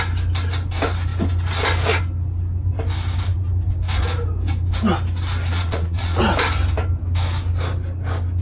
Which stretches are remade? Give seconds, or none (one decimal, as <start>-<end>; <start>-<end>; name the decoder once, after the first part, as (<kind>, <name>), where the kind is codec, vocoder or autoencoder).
5.5-6.2 (vocoder, Vocos)